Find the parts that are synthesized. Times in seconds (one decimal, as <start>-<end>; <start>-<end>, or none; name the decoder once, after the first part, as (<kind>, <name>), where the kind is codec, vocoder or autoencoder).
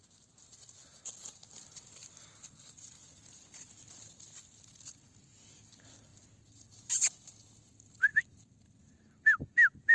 none